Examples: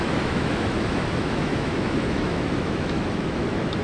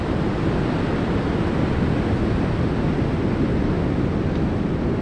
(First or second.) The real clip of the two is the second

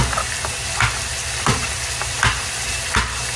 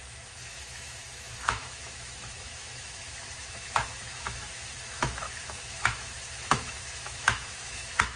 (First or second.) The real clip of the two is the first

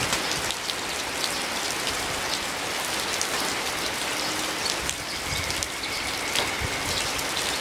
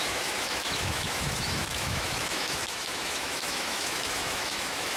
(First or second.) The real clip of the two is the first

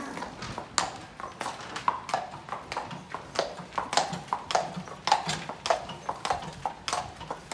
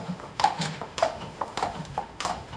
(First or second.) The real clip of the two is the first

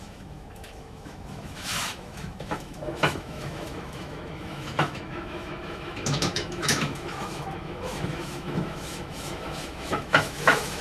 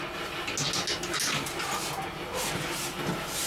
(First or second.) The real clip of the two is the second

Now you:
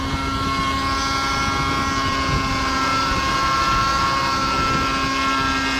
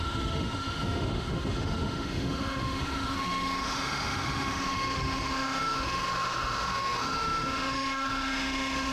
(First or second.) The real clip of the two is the first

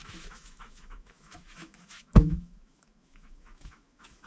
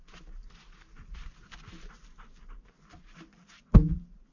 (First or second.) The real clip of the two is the second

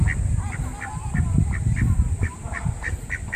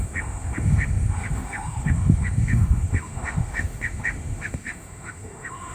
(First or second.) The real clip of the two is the first